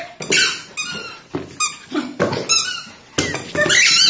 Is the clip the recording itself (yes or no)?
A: yes